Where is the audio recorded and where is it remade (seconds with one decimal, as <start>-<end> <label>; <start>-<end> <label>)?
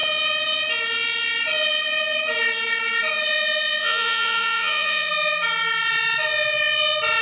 0.0-3.8 recorded; 3.8-5.1 remade; 5.1-7.2 recorded